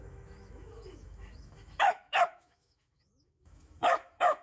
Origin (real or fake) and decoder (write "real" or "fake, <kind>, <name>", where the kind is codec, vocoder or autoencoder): fake, autoencoder, DAC-VAE